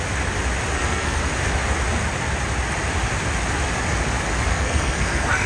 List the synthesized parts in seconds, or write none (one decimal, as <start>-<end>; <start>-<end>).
0.7-1.2; 4.5-5.5